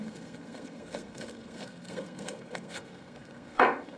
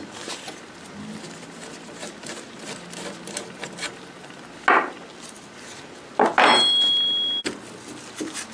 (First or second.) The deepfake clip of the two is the first